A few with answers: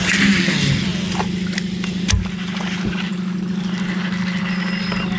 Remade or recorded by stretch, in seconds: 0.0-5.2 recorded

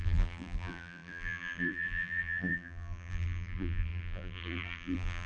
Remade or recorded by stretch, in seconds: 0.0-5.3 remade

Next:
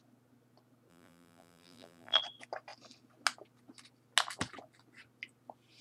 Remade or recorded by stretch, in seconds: 0.0-0.9 recorded; 0.9-2.2 remade; 2.2-5.8 recorded

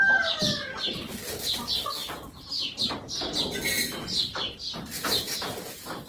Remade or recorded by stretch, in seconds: 0.0-2.0 recorded; 2.0-2.9 remade; 2.9-6.1 recorded

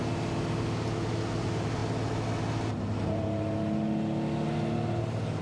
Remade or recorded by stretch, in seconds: 0.0-5.4 recorded

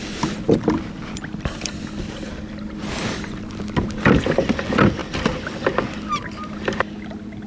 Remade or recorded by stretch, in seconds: 0.0-7.5 recorded

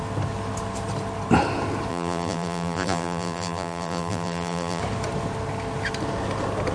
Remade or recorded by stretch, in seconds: 0.0-1.9 recorded; 1.9-4.8 remade; 4.8-6.7 recorded